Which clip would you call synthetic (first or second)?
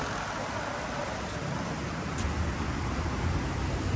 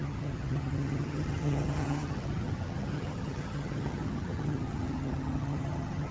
second